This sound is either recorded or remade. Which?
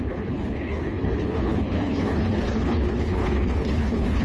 remade